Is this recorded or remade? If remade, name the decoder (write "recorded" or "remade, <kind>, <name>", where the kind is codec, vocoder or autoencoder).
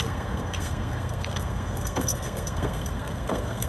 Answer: remade, codec, SNAC